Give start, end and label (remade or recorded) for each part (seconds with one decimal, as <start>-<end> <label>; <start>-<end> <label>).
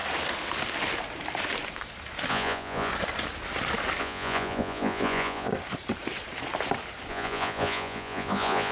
0.0-2.3 recorded; 2.3-2.9 remade; 2.9-4.0 recorded; 4.0-5.5 remade; 5.5-7.1 recorded; 7.1-8.7 remade